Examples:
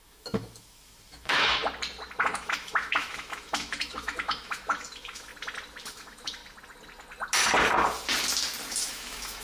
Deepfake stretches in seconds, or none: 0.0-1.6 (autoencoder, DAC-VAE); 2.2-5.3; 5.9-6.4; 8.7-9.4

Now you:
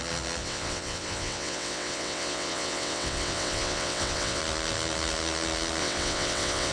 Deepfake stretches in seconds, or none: 0.4-4.4 (vocoder, WaveNeXt); 5.8-6.7

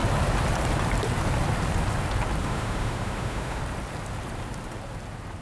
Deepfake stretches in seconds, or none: 2.4-3.6 (autoencoder, DAC-VAE)

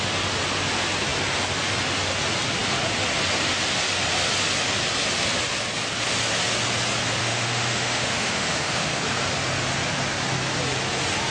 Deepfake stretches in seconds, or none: 7.2-9.0 (autoencoder, DAC-VAE)

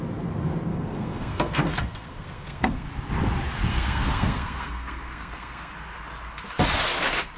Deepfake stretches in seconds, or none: 0.7-2.9 (codec, SNAC); 3.7-5.7